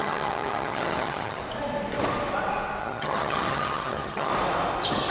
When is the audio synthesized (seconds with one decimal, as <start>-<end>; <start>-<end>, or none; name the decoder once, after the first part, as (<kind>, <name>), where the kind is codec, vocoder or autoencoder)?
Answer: 0.0-1.4 (vocoder, HiFi-GAN); 2.8-4.3